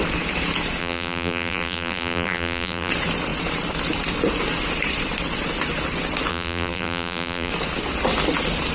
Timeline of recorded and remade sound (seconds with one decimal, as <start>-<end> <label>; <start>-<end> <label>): 0.0-0.8 recorded; 0.8-2.9 remade; 2.9-6.3 recorded; 6.3-7.5 remade; 7.5-8.7 recorded